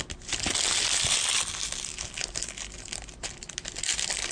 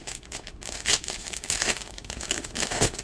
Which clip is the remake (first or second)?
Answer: second